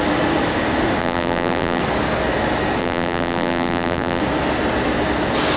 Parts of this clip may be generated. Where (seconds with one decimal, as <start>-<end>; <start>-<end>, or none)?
1.0-1.8; 2.8-4.2